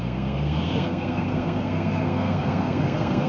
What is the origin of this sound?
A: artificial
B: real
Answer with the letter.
A